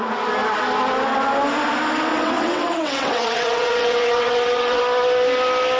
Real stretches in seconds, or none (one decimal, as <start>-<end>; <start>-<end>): 0.0-2.1; 4.8-5.8